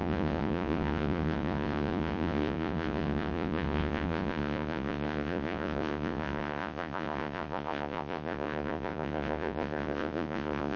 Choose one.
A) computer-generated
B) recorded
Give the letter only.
A